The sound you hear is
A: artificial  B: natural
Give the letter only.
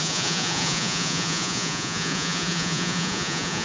A